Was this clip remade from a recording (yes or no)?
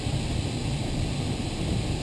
no